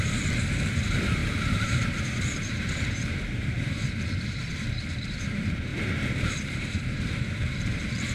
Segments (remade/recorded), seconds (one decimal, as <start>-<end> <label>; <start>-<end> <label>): 0.0-8.1 remade